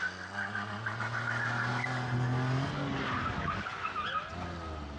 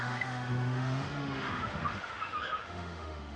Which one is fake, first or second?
second